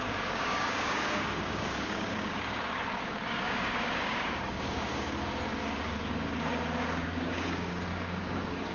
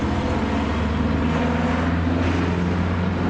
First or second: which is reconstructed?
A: first